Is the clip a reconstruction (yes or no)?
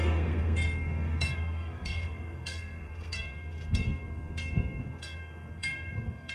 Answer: yes